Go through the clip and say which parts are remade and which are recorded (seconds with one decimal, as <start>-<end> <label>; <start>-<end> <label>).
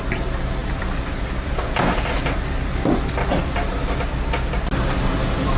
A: 0.0-0.6 recorded; 0.6-3.7 remade; 3.7-5.6 recorded